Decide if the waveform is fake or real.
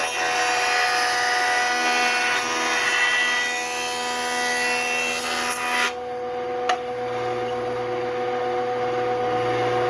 real